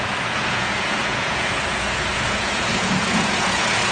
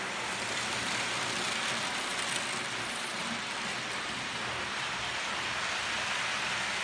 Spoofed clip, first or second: first